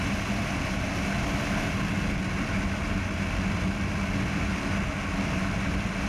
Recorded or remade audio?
recorded